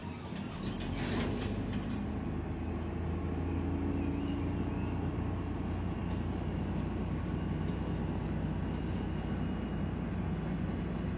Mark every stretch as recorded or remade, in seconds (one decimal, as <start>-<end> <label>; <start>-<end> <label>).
0.0-11.2 recorded